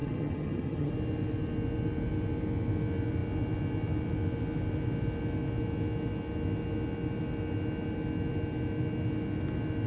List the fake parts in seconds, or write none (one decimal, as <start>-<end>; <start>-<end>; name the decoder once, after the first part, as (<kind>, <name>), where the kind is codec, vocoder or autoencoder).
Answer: 0.0-0.9 (vocoder, HiFi-GAN)